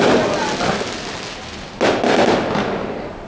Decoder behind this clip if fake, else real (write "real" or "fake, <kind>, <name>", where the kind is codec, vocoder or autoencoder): real